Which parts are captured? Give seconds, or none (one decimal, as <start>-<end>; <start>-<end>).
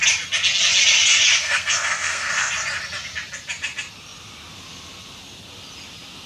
0.0-1.4; 2.5-6.3